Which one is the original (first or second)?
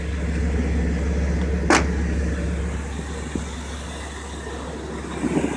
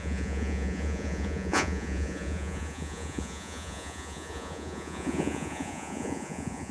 first